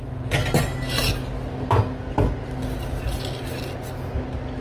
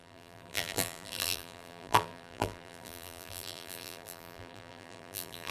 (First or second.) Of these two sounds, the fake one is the second